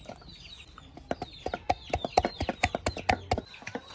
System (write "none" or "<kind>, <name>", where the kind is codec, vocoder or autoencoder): none